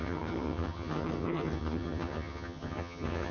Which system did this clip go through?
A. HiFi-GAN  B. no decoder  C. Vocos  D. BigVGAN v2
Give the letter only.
A